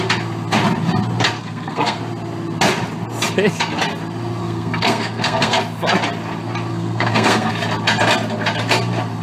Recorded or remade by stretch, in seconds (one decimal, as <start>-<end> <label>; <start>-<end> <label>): 0.0-1.4 recorded; 1.4-2.0 remade; 2.0-4.4 recorded; 4.4-5.6 remade; 5.6-6.7 recorded; 6.7-7.5 remade; 7.5-9.2 recorded